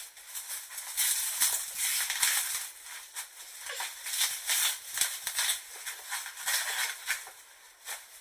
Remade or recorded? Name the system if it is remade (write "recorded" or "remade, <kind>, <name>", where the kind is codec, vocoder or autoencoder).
recorded